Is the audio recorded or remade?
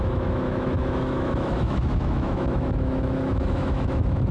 remade